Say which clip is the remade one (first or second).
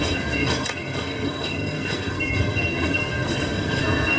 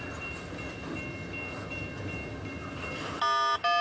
first